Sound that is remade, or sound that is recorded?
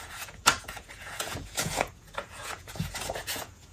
remade